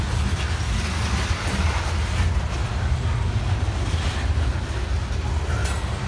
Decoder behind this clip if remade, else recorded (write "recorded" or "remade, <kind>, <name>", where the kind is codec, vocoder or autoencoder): recorded